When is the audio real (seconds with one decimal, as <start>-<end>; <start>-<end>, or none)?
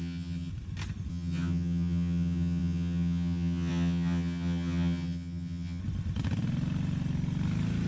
0.5-1.1; 5.8-7.9